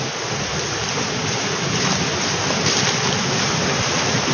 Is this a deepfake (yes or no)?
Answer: no